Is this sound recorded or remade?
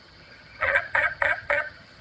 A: remade